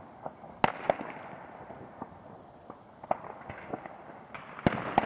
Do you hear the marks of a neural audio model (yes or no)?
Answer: no